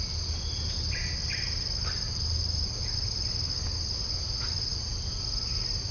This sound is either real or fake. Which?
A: real